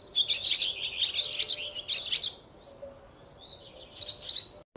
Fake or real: real